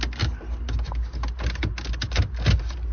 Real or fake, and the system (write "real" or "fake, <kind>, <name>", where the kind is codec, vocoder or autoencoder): real